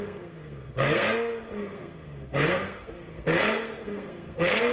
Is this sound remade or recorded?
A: remade